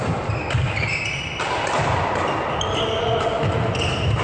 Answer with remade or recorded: recorded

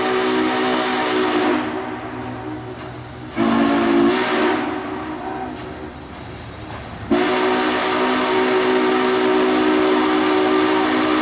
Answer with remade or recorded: recorded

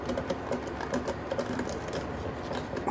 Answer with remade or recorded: recorded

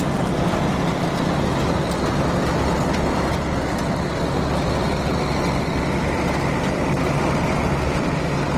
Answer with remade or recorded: recorded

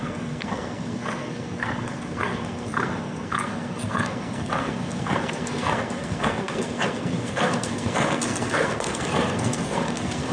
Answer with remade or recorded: remade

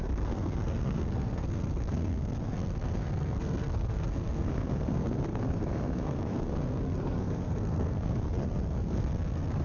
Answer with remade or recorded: remade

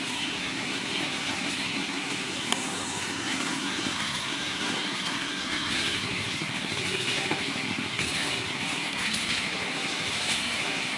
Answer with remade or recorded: remade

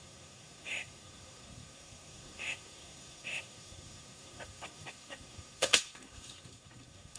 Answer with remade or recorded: remade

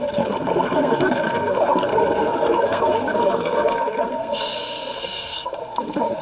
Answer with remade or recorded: remade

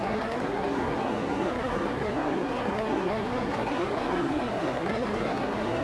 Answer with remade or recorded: remade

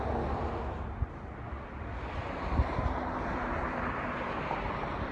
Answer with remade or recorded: recorded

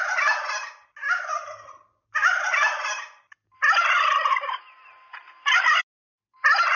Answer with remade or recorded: recorded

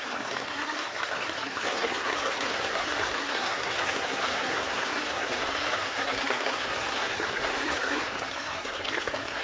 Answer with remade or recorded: remade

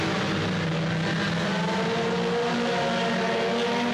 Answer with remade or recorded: recorded